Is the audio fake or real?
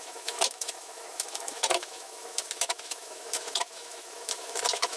fake